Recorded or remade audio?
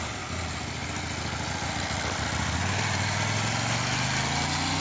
recorded